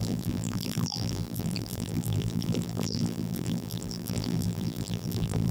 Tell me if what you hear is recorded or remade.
remade